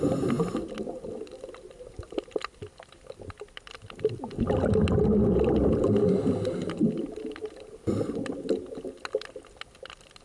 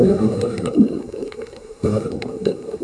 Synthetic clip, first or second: second